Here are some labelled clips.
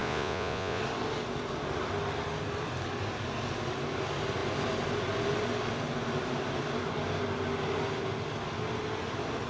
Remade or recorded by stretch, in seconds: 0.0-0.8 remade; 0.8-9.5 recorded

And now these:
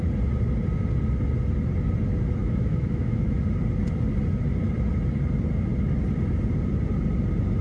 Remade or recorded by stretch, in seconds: 0.0-2.4 recorded; 2.4-3.4 remade; 3.4-7.6 recorded

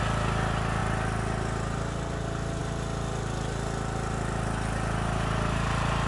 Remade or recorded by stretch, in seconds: 0.0-6.1 recorded

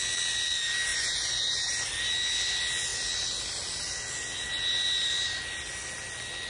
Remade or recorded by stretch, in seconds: 0.0-0.9 recorded; 0.9-1.5 remade; 1.5-6.5 recorded